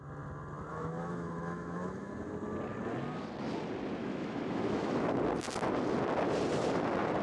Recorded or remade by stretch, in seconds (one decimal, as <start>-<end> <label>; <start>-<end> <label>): 0.0-0.7 recorded; 0.7-2.1 remade; 2.1-4.0 recorded; 4.0-5.2 remade; 5.2-7.2 recorded

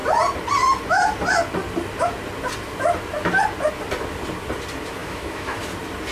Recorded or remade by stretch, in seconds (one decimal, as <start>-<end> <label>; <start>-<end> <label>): 0.0-5.0 recorded; 5.0-5.6 remade; 5.6-6.1 recorded

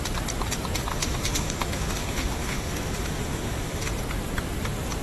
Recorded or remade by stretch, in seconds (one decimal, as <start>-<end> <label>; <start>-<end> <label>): 0.0-0.9 recorded; 0.9-3.9 remade; 3.9-5.0 recorded